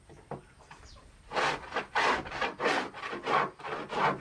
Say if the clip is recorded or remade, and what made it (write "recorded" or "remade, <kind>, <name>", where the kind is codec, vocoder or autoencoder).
recorded